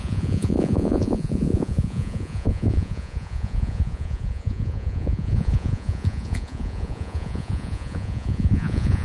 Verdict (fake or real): fake